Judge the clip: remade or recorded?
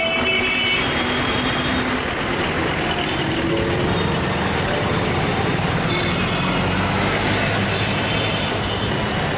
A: recorded